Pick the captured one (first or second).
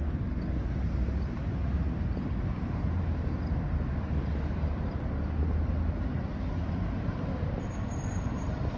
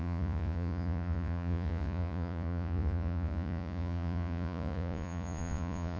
first